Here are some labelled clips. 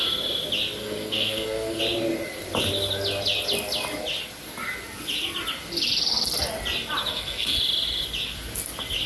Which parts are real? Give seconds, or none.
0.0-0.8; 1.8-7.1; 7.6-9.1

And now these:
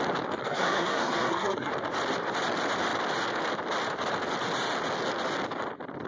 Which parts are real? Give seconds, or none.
0.0-0.4; 1.7-6.1

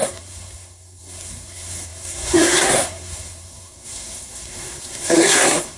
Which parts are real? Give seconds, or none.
none

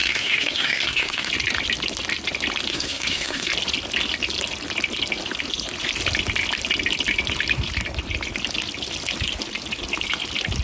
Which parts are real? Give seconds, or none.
1.3-2.7; 3.5-10.6

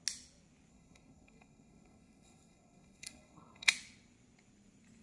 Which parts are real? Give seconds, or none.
0.0-0.7; 3.7-5.0

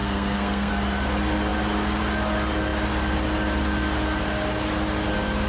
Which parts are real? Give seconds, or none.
0.7-5.5

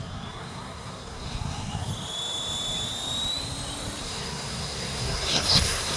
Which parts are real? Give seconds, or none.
1.9-4.0